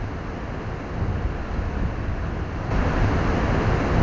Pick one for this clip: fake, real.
real